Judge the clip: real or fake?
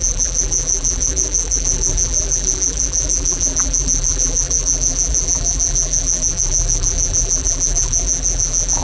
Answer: fake